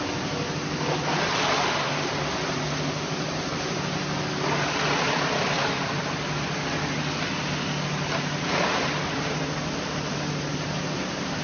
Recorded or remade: recorded